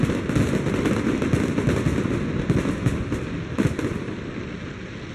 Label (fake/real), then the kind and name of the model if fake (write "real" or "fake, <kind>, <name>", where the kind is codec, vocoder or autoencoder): real